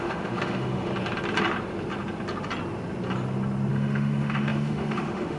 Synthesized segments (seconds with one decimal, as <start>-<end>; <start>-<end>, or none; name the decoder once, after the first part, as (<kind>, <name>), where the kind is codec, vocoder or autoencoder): 0.0-0.9 (autoencoder, DAC-VAE); 3.7-5.4